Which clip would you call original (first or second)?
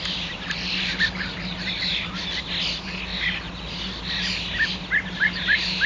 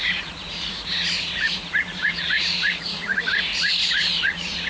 first